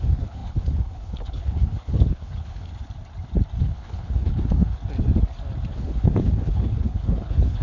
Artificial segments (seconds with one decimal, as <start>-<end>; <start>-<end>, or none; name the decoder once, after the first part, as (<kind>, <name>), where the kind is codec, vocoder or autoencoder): 0.0-2.7 (codec, HILCodec); 3.6-4.8; 5.7-7.6